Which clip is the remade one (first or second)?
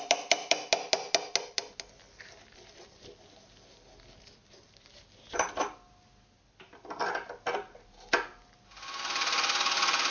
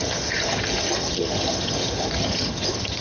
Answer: second